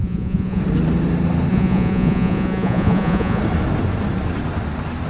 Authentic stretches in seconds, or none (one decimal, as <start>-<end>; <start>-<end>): 0.6-1.5; 3.4-5.1